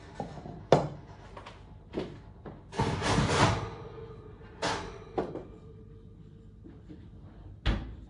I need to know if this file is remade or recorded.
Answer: recorded